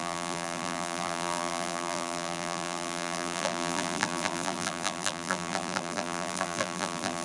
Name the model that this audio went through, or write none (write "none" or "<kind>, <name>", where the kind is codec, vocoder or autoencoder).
vocoder, BigVGAN v2